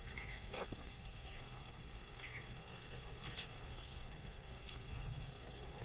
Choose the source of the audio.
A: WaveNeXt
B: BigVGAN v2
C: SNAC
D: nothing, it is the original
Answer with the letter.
C